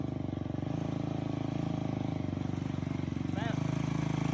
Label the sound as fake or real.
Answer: real